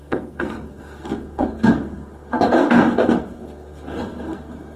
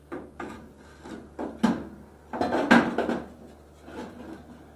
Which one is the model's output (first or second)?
first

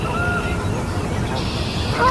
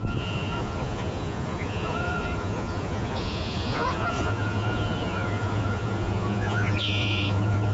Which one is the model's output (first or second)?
second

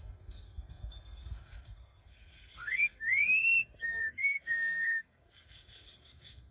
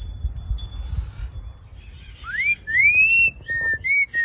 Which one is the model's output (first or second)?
first